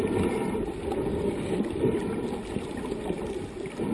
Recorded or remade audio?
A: recorded